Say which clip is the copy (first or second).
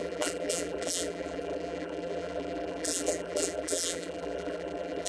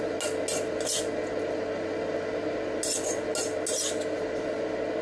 first